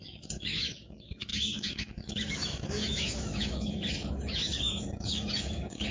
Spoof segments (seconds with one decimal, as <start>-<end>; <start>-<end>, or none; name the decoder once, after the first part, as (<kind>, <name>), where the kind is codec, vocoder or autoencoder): 0.0-5.9 (autoencoder, DAC-VAE)